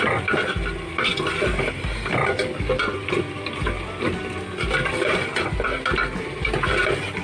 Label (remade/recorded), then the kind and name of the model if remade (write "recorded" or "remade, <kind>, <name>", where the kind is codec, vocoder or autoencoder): recorded